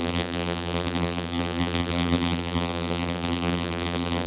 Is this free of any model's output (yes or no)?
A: no